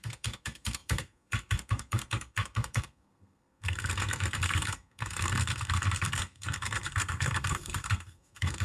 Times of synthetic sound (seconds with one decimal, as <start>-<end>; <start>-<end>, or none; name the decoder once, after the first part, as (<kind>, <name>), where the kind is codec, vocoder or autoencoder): 0.0-8.6 (codec, SNAC)